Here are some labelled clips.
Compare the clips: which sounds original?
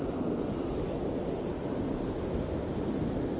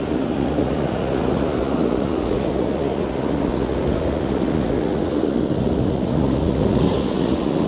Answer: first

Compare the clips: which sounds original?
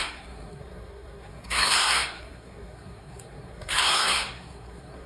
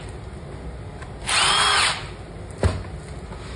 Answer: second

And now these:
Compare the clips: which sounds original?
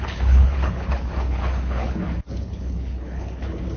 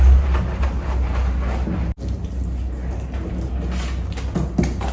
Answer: second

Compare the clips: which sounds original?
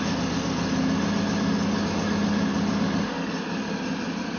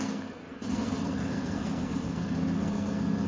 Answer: first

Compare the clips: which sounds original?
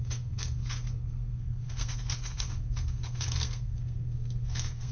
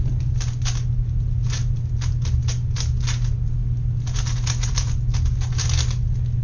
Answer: second